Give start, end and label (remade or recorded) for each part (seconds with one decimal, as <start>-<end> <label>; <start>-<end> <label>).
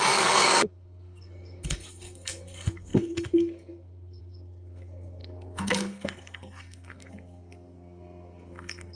0.0-9.0 remade